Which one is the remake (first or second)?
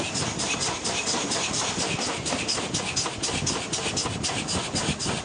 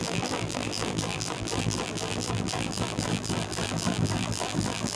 second